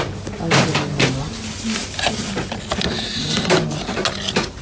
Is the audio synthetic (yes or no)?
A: no